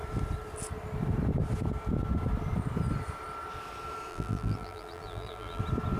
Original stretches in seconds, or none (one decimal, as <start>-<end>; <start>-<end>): 0.0-4.1; 5.6-6.0